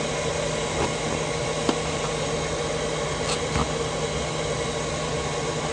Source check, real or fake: real